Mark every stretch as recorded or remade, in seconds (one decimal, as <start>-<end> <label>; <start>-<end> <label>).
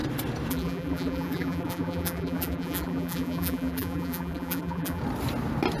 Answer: 0.0-0.5 recorded; 0.5-5.0 remade; 5.0-5.8 recorded